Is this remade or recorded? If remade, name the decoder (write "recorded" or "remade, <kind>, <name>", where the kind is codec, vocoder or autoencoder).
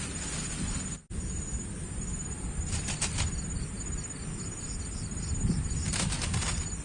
recorded